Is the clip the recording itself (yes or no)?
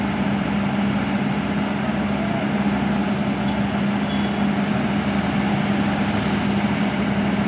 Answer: yes